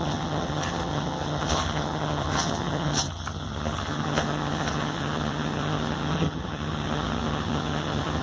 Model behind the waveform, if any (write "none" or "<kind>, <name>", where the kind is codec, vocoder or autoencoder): vocoder, HiFi-GAN